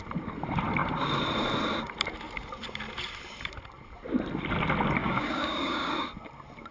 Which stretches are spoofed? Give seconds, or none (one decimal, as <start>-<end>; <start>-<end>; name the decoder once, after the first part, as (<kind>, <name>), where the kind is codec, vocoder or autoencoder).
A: 5.0-5.9 (codec, DAC)